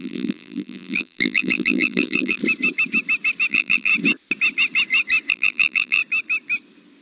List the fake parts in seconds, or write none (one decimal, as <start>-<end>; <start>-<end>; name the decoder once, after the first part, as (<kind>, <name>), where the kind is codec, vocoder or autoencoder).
0.0-2.4 (vocoder, BigVGAN v2); 3.5-3.9; 5.3-6.0